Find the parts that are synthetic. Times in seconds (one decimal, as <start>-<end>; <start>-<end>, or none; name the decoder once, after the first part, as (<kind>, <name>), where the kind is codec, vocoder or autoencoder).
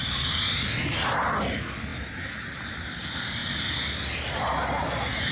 none